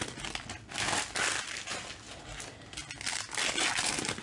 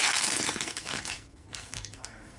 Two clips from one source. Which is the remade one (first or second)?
second